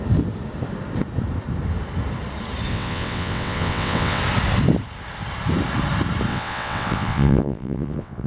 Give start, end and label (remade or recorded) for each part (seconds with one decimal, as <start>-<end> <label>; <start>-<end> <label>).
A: 0.0-2.7 recorded; 2.7-4.2 remade; 4.2-6.3 recorded; 6.3-8.3 remade